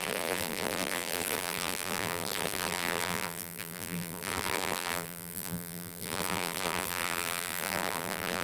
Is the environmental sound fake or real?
fake